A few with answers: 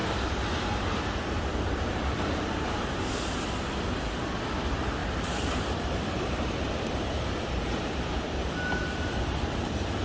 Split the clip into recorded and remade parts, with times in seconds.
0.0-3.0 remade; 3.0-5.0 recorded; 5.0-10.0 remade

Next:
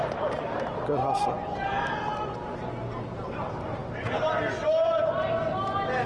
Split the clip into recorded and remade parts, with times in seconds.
0.0-0.7 remade; 0.7-3.8 recorded; 3.8-4.3 remade; 4.3-6.1 recorded

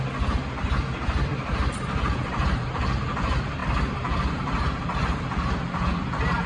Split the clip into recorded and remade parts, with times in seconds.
0.0-1.3 recorded; 1.3-2.8 remade; 2.8-3.6 recorded; 3.6-5.9 remade; 5.9-6.5 recorded

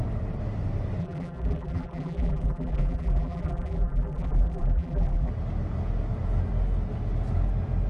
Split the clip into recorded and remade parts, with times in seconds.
0.0-1.0 recorded; 1.0-5.3 remade; 5.3-7.9 recorded

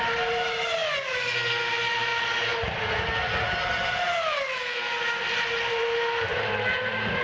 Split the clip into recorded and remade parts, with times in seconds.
0.0-0.8 remade; 0.8-1.7 recorded; 1.7-2.1 remade; 2.1-5.7 recorded; 5.7-7.2 remade